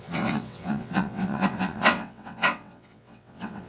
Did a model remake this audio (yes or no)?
yes